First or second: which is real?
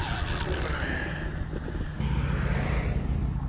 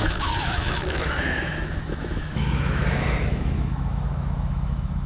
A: first